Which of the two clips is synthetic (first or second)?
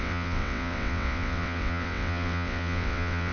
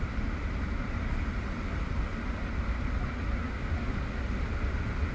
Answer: first